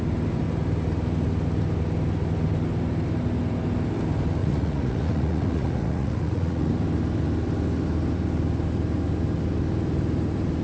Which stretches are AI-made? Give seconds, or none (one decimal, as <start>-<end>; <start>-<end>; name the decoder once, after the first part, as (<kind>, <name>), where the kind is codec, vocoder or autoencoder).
4.4-6.7 (vocoder, Vocos)